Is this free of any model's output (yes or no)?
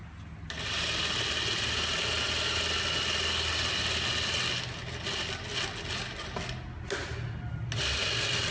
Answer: yes